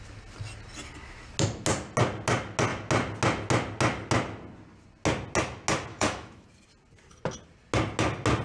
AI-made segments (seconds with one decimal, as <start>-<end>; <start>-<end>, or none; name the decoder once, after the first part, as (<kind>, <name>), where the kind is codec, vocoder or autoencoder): 5.9-6.5 (autoencoder, DAC-VAE)